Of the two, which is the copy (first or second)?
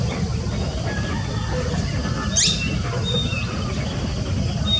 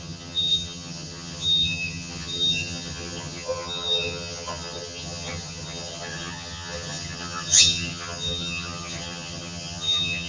second